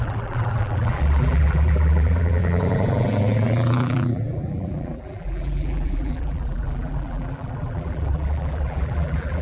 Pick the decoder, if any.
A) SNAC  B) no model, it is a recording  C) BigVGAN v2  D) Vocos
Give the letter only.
C